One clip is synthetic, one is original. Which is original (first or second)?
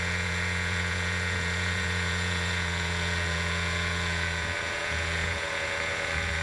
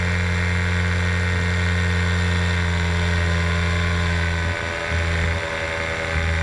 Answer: second